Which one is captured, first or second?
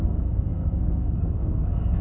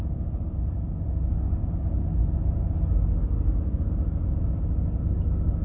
second